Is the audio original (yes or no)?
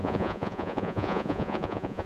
no